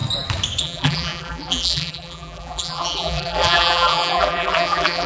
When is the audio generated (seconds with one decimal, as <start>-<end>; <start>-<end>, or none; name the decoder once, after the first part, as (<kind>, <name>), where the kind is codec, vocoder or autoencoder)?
0.6-5.1 (vocoder, BigVGAN v2)